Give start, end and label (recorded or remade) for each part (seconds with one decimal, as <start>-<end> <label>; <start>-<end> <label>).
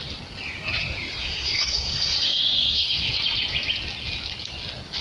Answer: 0.0-1.2 recorded; 1.2-3.2 remade; 3.2-5.0 recorded